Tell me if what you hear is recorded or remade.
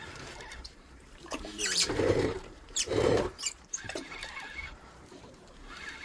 remade